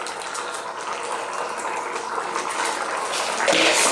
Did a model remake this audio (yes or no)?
no